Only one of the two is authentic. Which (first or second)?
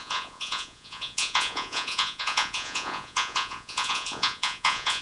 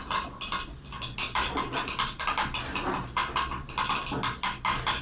second